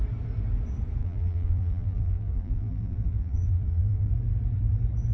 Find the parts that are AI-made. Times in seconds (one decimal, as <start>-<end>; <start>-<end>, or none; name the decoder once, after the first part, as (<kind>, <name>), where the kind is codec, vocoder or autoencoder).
1.0-4.1 (vocoder, BigVGAN v2)